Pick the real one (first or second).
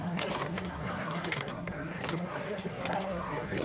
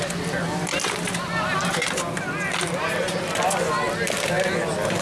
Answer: second